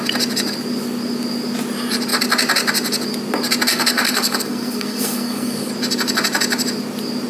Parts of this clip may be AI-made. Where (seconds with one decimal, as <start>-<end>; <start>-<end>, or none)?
3.7-5.7